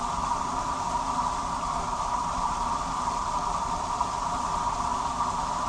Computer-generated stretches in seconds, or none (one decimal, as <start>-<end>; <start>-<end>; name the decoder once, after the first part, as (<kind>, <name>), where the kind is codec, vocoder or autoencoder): 0.0-5.7 (vocoder, BigVGAN v2)